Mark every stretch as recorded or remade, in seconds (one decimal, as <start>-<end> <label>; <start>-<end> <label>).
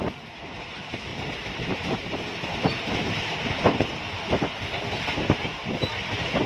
0.0-1.1 recorded; 1.1-4.3 remade; 4.3-6.5 recorded